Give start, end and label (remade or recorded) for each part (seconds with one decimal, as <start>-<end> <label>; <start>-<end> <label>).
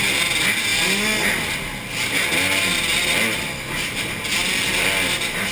0.0-5.5 recorded